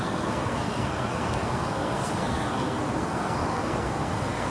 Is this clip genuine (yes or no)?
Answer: no